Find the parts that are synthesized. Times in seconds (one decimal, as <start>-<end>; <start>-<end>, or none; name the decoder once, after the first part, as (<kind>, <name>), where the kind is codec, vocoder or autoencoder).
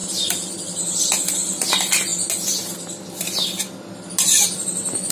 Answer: none